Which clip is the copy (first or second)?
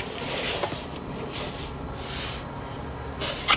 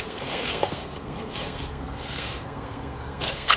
second